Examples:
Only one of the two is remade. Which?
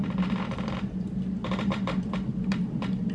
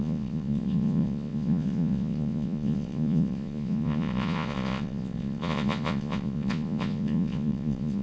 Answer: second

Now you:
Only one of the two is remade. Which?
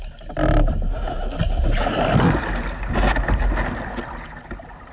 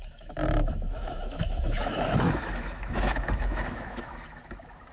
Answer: second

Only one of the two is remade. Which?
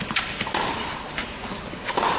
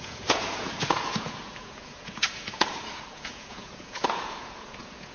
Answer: second